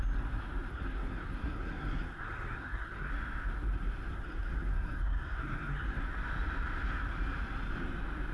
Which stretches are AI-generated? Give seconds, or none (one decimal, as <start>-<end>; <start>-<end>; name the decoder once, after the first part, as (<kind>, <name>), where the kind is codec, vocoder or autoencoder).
0.7-3.1 (codec, SNAC); 4.1-6.0